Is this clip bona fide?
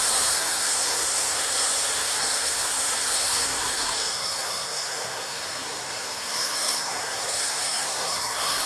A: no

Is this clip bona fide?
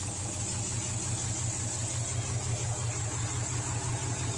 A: yes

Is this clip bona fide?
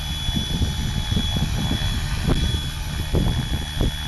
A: yes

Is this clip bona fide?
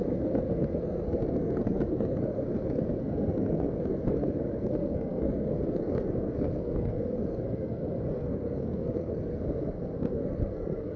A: no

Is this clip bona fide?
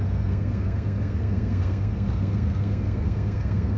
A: no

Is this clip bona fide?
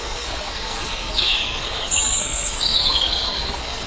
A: no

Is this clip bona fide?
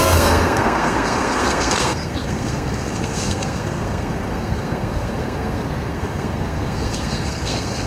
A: no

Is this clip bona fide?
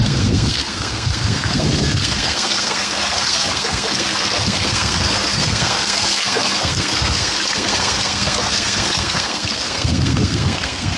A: no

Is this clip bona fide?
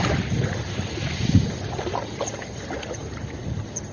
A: yes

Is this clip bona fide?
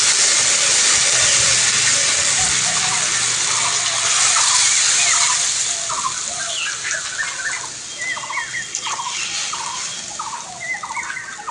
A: yes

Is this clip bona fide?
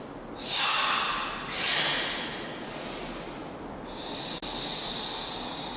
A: yes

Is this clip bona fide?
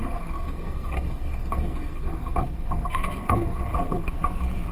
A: no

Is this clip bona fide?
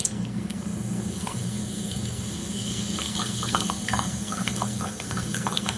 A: no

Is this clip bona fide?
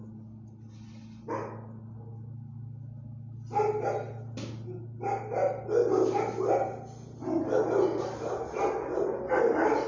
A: yes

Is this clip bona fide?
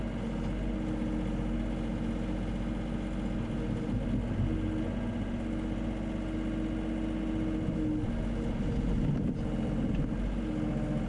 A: yes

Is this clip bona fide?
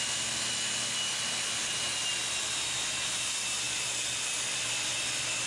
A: yes